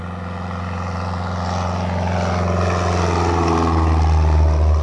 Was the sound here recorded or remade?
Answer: recorded